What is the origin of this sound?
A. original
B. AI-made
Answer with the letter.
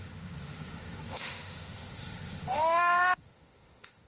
B